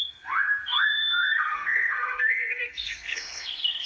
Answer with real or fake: fake